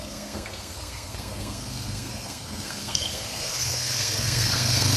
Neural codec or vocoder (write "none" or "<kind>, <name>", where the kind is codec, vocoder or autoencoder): codec, SNAC